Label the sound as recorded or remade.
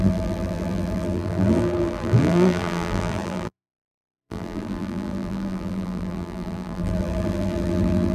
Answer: remade